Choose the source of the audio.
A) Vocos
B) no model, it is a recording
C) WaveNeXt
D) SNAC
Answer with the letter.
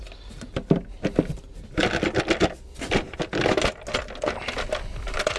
B